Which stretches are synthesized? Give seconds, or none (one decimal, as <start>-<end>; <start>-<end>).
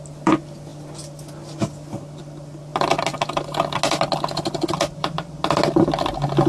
none